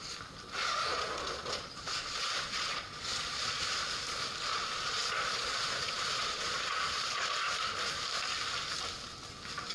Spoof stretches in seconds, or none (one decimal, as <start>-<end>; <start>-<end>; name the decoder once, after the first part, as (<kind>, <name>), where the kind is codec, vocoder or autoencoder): 0.8-3.9 (vocoder, Vocos); 4.5-7.5